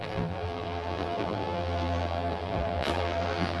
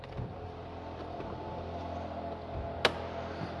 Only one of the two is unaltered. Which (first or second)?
second